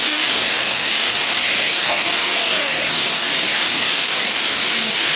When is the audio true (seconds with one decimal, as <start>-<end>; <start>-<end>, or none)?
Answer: none